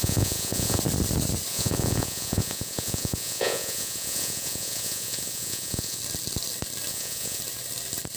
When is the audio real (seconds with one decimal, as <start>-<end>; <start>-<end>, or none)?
0.8-1.5; 6.0-6.9; 7.4-8.2

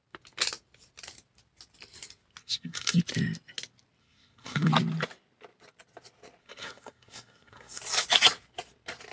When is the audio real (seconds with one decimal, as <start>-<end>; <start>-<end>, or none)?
0.0-2.4; 3.0-4.0; 4.7-6.4; 7.8-9.1

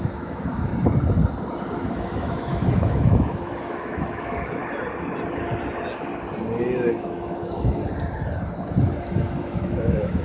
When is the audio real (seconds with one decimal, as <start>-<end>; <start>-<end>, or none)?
0.7-1.7; 4.6-6.9; 7.8-9.0

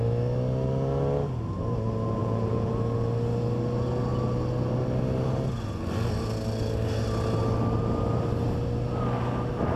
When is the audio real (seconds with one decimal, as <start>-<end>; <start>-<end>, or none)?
0.0-2.2; 2.7-9.8